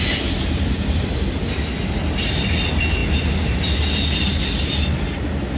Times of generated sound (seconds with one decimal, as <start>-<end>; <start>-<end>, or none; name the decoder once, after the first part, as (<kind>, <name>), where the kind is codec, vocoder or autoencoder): none